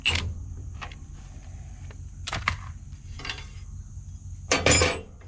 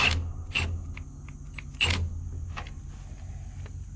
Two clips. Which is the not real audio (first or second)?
first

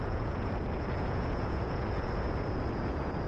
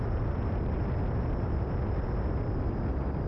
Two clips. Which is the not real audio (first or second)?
first